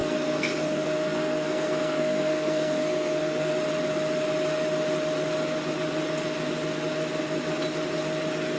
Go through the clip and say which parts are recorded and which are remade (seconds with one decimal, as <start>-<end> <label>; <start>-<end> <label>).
0.0-3.5 remade; 3.5-8.6 recorded